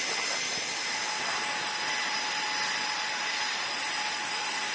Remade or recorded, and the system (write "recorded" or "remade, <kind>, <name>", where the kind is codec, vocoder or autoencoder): recorded